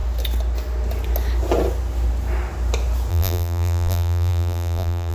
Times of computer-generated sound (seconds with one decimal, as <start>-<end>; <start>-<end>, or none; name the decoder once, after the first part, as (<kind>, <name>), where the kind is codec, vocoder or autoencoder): 3.1-5.1 (vocoder, BigVGAN v2)